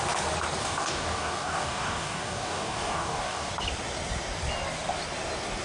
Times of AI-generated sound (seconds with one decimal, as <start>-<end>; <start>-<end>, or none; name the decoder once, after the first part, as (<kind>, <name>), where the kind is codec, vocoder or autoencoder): 0.6-3.5 (codec, DAC)